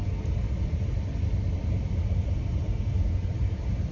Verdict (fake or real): real